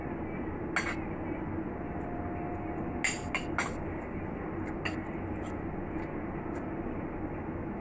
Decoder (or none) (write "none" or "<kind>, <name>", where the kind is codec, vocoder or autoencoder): none